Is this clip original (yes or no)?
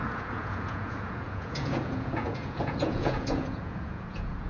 no